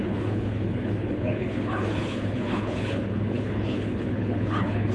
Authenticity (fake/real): fake